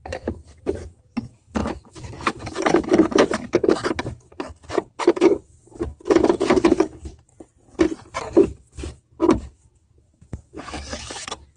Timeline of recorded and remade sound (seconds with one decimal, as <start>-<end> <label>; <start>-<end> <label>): 0.0-7.3 remade; 7.3-8.2 recorded; 8.2-11.6 remade